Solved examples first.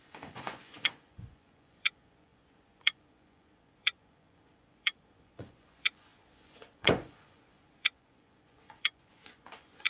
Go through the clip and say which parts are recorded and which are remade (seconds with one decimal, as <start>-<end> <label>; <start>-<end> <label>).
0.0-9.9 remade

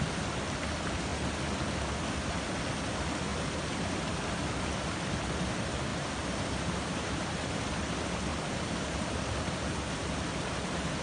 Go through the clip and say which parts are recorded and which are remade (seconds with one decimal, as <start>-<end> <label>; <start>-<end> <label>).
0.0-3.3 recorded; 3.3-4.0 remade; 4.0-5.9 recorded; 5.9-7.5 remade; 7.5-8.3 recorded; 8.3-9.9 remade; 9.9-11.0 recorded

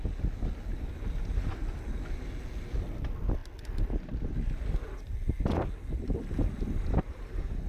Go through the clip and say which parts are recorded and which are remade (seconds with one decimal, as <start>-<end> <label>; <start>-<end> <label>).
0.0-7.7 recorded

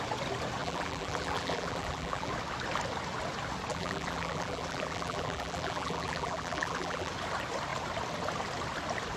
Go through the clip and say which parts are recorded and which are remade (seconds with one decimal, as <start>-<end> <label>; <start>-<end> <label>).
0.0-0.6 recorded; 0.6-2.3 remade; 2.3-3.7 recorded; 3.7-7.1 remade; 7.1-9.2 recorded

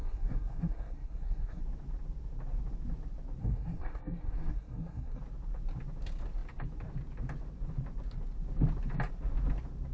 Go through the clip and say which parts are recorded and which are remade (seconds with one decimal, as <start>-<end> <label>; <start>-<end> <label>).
0.0-1.6 remade; 1.6-3.4 recorded; 3.4-5.2 remade; 5.2-9.9 recorded